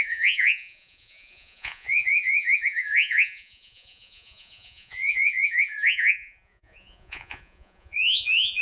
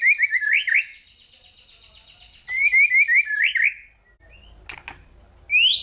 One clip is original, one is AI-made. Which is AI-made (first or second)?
first